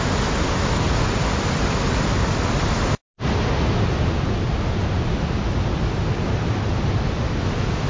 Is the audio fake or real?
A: real